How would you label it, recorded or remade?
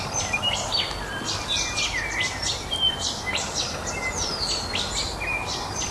recorded